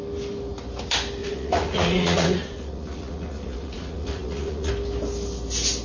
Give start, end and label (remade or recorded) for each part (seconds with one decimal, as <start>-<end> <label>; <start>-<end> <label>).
0.0-1.2 recorded; 1.2-4.7 remade; 4.7-5.8 recorded